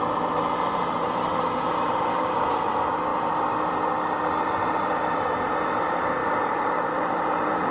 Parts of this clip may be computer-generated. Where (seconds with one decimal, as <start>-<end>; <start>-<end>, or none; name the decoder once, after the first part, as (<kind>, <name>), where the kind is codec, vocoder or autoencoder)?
1.3-2.6 (vocoder, BigVGAN v2); 6.2-7.7